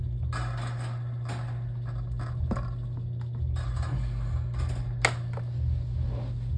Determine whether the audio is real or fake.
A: real